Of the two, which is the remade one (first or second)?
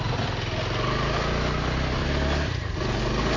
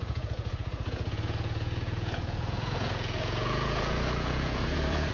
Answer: second